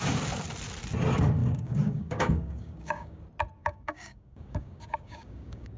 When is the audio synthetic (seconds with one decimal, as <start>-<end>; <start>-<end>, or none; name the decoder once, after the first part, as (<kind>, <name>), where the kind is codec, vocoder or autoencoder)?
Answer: 1.4-3.2 (codec, DAC); 3.6-5.8